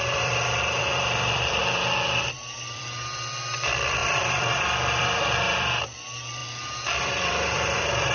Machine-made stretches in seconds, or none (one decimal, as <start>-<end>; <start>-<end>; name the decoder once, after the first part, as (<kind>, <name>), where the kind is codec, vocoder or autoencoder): 0.0-1.6 (vocoder, BigVGAN v2); 2.2-8.1